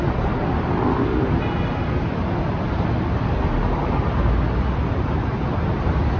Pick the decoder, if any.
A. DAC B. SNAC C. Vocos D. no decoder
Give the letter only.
D